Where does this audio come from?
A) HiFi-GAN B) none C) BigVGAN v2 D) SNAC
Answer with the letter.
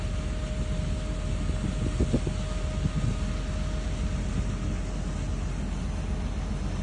B